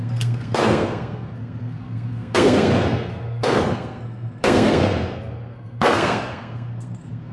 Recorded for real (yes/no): no